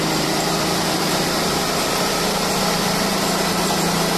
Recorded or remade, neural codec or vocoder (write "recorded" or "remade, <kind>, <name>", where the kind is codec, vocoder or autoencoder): remade, vocoder, BigVGAN v2